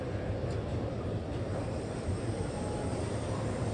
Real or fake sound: fake